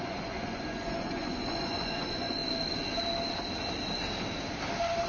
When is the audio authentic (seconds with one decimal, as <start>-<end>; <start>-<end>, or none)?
2.4-5.1